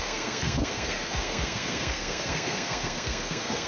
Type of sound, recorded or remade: remade